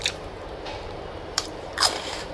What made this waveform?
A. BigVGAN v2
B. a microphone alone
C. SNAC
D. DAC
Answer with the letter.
A